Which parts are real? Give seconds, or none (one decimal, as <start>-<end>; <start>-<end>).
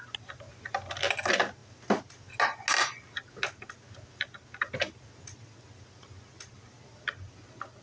0.0-7.8